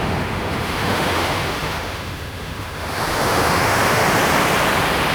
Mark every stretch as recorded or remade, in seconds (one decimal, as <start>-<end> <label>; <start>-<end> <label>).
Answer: 0.0-4.0 remade; 4.0-5.1 recorded